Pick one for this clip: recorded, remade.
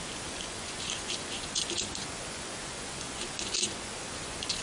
remade